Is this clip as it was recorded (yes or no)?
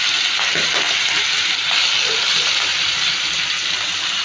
yes